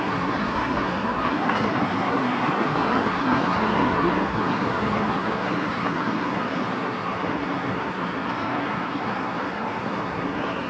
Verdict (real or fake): fake